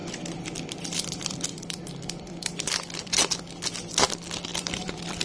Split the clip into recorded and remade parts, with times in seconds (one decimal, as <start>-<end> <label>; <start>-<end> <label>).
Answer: 0.0-3.1 remade; 3.1-4.5 recorded; 4.5-5.2 remade